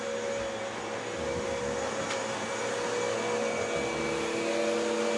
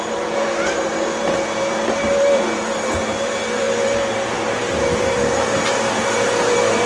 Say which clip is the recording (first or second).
first